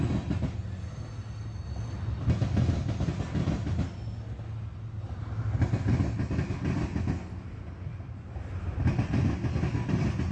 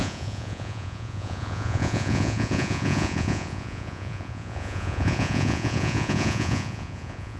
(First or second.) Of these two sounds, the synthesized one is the second